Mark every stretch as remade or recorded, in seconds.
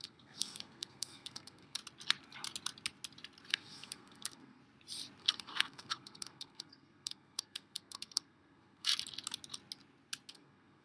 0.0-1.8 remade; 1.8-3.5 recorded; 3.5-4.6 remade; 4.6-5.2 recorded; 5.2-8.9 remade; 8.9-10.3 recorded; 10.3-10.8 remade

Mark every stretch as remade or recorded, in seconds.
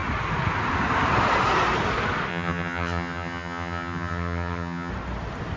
0.0-2.3 recorded; 2.3-4.9 remade; 4.9-5.6 recorded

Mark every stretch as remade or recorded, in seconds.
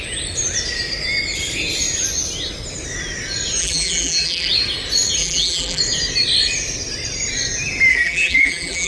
0.0-3.6 recorded; 3.6-4.5 remade; 4.5-5.2 recorded; 5.2-5.8 remade; 5.8-7.9 recorded; 7.9-8.9 remade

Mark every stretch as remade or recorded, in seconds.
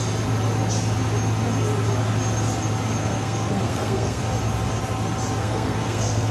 0.0-3.0 recorded; 3.0-4.2 remade; 4.2-5.4 recorded; 5.4-6.3 remade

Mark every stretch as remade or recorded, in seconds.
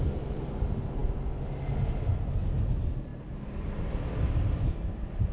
0.0-5.3 recorded